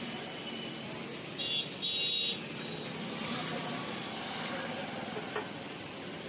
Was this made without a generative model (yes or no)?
yes